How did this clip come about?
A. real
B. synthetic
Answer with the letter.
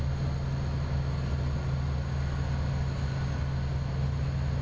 A